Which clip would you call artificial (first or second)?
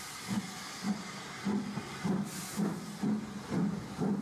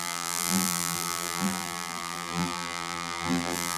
second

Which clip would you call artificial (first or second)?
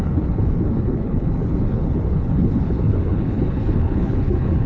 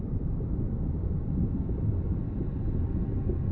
first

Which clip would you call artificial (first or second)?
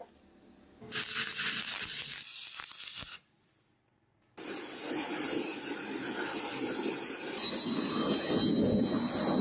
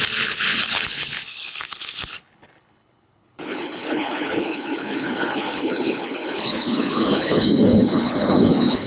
second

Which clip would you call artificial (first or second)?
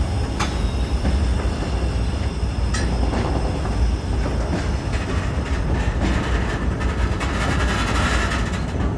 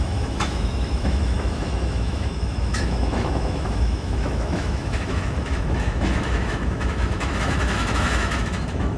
second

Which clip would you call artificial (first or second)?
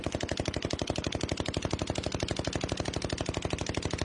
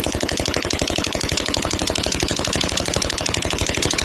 second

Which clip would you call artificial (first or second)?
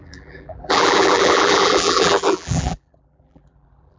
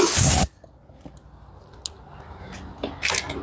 first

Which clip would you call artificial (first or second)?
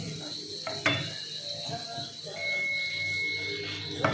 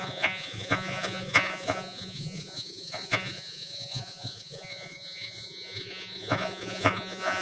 second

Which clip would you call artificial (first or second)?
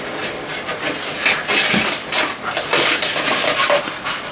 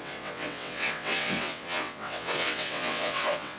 second